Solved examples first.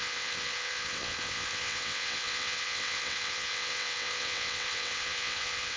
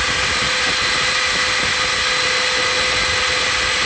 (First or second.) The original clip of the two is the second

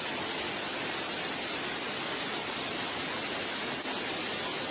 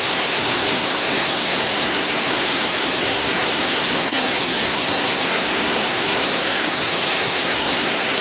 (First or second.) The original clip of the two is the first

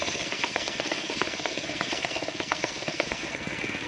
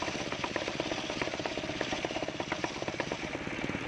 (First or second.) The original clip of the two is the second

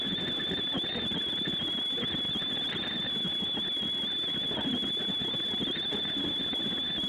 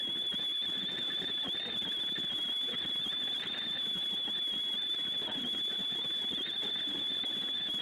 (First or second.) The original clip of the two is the first